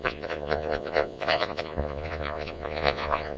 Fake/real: fake